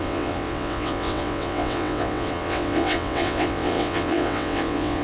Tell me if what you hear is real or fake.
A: fake